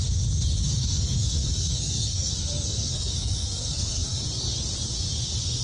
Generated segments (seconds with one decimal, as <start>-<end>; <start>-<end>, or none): 0.8-4.2